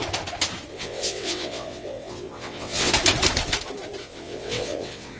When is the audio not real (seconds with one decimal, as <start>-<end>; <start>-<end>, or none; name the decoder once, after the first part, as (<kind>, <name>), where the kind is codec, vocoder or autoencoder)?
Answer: 0.7-2.9 (vocoder, WaveNeXt); 4.0-5.2